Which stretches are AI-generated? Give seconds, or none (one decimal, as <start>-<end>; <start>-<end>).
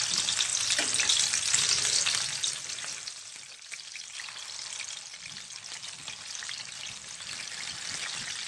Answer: none